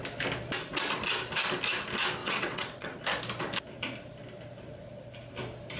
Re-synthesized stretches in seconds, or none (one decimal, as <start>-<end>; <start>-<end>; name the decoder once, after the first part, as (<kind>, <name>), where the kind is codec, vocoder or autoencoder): 2.2-3.0 (vocoder, WaveNeXt)